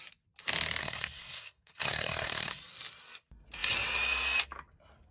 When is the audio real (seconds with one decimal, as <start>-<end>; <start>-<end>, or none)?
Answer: 0.0-0.8; 2.6-5.1